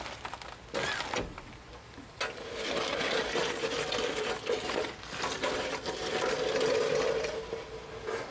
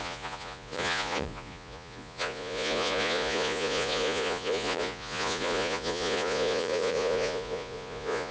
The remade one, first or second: second